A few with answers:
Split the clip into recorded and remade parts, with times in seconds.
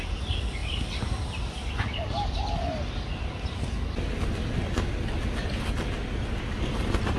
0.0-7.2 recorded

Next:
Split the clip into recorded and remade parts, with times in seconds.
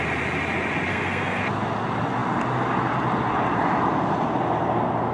0.0-0.9 recorded; 0.9-1.4 remade; 1.4-5.1 recorded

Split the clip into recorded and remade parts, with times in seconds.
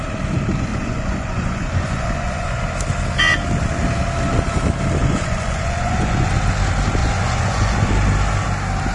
0.0-0.7 recorded; 0.7-2.6 remade; 2.6-5.0 recorded; 5.0-6.3 remade; 6.3-7.0 recorded; 7.0-7.9 remade; 7.9-8.9 recorded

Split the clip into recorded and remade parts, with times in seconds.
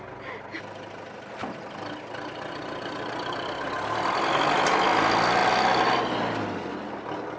0.0-7.4 recorded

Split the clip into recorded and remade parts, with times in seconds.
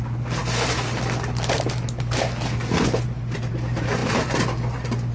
0.0-5.1 recorded